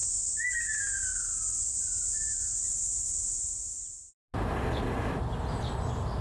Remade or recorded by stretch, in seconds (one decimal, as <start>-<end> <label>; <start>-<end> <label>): 0.0-6.2 recorded

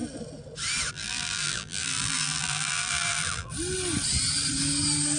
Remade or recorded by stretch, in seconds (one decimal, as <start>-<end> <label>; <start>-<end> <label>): 0.0-0.9 recorded; 0.9-3.5 remade; 3.5-5.2 recorded

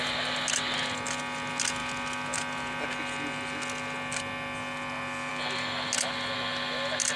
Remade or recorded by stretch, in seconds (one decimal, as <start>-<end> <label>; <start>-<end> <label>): 0.0-7.2 recorded

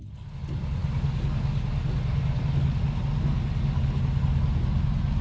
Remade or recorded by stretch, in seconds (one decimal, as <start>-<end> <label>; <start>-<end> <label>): 0.0-5.2 recorded

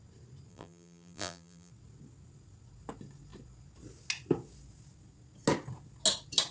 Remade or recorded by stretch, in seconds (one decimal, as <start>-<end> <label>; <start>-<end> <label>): 0.0-0.5 recorded; 0.5-1.7 remade; 1.7-6.5 recorded

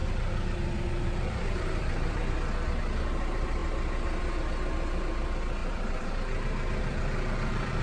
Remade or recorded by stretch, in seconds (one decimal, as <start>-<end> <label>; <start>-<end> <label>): 0.0-2.3 remade; 2.3-5.6 recorded; 5.6-7.8 remade

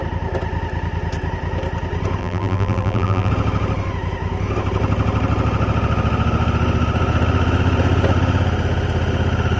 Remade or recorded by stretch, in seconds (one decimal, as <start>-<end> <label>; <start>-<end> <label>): 0.0-2.2 recorded; 2.2-3.3 remade; 3.3-9.6 recorded